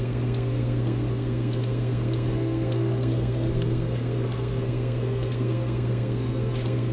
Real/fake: fake